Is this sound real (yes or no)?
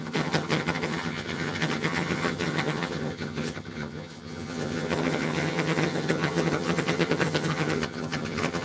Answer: no